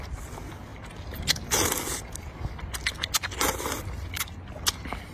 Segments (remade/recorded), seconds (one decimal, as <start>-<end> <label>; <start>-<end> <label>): 0.0-5.1 recorded